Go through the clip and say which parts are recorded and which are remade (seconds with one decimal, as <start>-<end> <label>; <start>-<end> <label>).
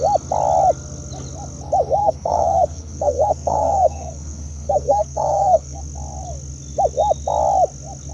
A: 0.0-2.0 recorded; 2.0-5.8 remade; 5.8-8.1 recorded